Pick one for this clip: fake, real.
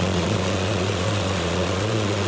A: fake